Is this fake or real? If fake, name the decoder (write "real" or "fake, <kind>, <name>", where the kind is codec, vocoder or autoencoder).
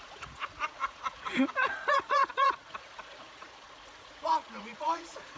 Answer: fake, vocoder, Vocos